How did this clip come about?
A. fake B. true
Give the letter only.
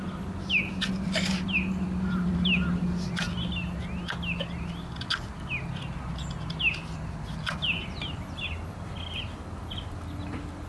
B